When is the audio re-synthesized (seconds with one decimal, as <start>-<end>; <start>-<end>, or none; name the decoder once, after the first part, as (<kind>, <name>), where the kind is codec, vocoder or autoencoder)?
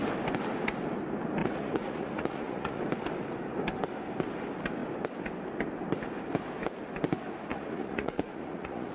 1.4-2.8 (vocoder, Vocos); 7.5-8.9